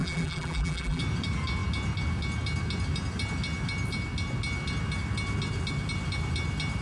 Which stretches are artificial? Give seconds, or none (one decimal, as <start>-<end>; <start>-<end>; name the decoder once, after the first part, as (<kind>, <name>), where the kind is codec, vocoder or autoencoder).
0.0-1.0 (vocoder, BigVGAN v2)